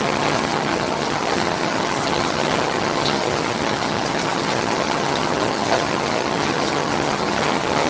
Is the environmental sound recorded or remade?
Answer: remade